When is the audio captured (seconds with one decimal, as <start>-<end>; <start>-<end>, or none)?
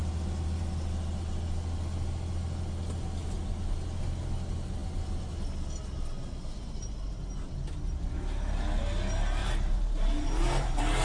0.0-9.4